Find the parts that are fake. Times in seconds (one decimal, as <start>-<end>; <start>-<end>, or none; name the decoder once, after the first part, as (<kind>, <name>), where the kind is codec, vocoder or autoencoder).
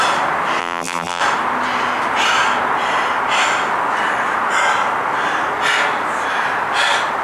0.6-1.2 (vocoder, BigVGAN v2)